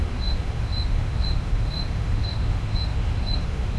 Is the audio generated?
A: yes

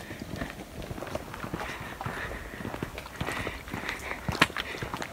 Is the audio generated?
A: no